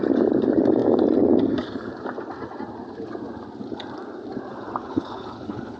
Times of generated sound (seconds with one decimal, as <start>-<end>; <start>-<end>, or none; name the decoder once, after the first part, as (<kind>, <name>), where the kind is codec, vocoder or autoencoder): 4.8-5.8 (codec, HILCodec)